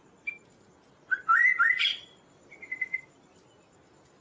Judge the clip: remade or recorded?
recorded